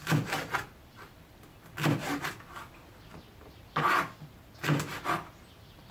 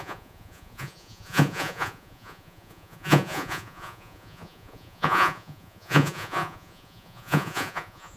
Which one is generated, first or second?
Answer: second